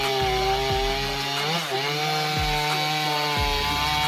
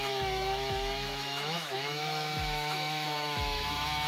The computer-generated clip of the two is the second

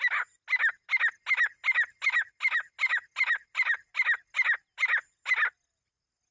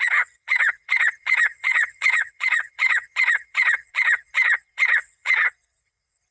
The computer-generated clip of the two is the second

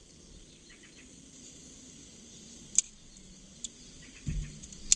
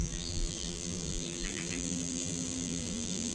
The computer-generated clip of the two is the second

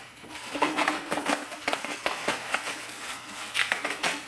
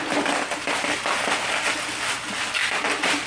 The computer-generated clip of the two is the first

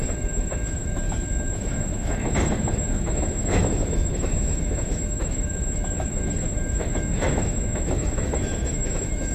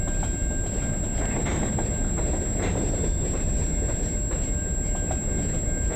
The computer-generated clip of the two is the first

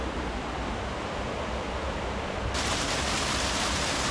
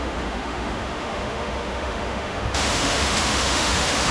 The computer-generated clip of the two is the second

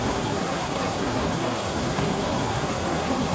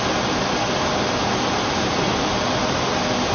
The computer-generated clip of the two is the first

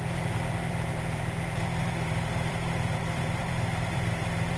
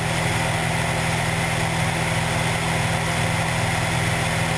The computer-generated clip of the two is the first